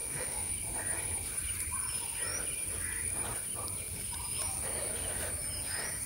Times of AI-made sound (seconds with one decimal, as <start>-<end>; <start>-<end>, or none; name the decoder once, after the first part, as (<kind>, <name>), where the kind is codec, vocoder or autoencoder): 0.0-0.5 (autoencoder, DAC-VAE)